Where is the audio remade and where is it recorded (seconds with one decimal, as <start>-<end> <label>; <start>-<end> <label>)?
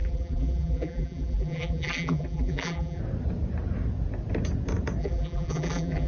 0.0-3.0 remade; 3.0-5.0 recorded; 5.0-6.1 remade